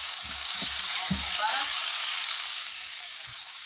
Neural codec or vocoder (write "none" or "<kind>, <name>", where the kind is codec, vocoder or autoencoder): codec, DAC